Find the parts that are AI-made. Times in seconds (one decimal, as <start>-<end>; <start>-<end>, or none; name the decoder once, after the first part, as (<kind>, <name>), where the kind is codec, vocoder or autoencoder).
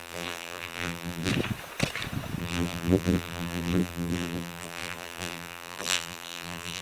0.0-1.3 (vocoder, BigVGAN v2); 2.4-6.8